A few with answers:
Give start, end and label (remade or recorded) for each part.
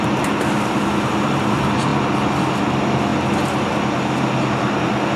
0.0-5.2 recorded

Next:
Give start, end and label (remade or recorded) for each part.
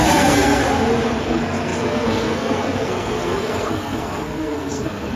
0.0-0.6 remade; 0.6-1.2 recorded; 1.2-5.2 remade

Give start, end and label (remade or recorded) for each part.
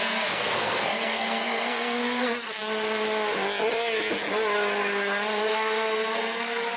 0.0-2.6 remade; 2.6-5.5 recorded; 5.5-6.8 remade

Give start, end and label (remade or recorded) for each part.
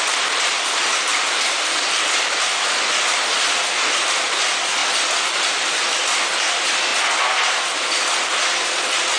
0.0-9.2 recorded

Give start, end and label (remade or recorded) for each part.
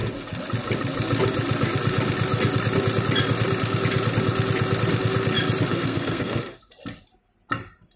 0.0-5.7 recorded; 5.7-6.6 remade; 6.6-8.0 recorded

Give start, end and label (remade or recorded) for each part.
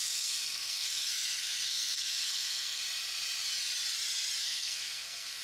0.0-2.8 remade; 2.8-4.4 recorded; 4.4-5.4 remade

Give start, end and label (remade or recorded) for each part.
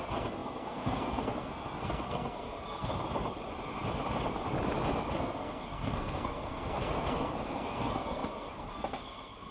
0.0-2.9 remade; 2.9-5.2 recorded; 5.2-9.5 remade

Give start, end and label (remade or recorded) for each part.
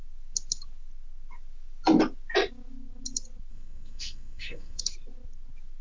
0.0-3.5 recorded; 3.5-4.8 remade; 4.8-5.8 recorded